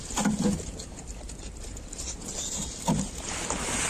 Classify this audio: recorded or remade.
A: recorded